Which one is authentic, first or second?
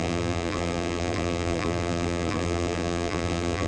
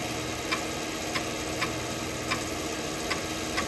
second